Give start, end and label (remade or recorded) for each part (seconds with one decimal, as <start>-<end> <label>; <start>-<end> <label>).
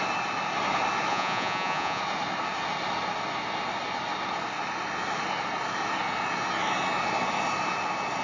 0.0-1.1 recorded; 1.1-2.0 remade; 2.0-8.2 recorded